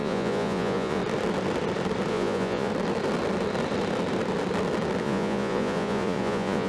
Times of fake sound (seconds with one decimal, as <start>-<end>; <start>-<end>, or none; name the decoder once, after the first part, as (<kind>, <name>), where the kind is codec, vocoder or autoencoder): 0.0-1.0 (vocoder, Vocos); 2.1-2.7; 5.0-6.7